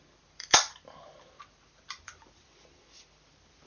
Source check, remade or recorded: remade